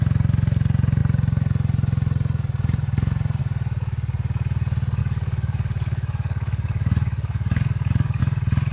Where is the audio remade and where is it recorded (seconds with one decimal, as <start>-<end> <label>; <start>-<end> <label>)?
0.0-5.0 recorded; 5.0-8.2 remade; 8.2-8.7 recorded